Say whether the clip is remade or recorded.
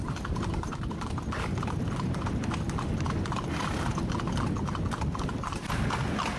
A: recorded